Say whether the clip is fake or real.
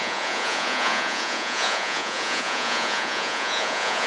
fake